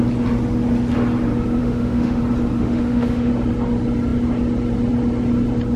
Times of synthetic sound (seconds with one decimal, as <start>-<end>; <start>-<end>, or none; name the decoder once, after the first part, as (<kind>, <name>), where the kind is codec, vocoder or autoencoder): 1.6-2.2 (autoencoder, DAC-VAE); 2.6-3.3

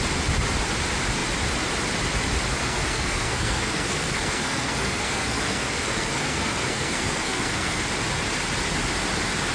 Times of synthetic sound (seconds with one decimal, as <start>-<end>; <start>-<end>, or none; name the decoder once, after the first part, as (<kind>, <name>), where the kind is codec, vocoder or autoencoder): 2.6-7.8 (codec, SNAC)

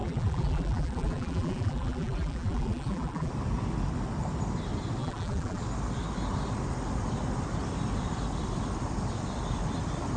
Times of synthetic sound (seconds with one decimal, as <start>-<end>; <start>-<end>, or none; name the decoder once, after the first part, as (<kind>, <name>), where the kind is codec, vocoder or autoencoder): 0.0-3.3 (vocoder, BigVGAN v2); 5.0-5.6

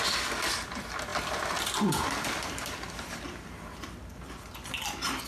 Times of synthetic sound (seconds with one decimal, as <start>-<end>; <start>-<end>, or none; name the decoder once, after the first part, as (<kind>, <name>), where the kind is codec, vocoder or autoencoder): 1.1-4.3 (vocoder, BigVGAN v2)

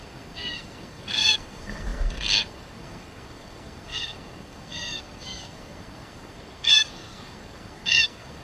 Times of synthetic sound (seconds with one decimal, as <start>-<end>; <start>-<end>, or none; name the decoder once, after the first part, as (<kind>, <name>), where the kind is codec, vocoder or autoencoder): 0.0-8.4 (codec, SNAC)